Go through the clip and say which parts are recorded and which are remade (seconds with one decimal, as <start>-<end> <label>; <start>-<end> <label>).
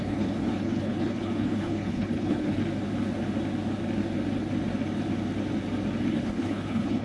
0.0-2.6 remade; 2.6-6.1 recorded; 6.1-7.0 remade